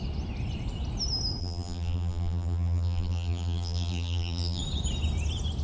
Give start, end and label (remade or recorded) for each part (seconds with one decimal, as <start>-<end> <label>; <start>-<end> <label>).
0.0-1.4 recorded; 1.4-4.6 remade; 4.6-5.6 recorded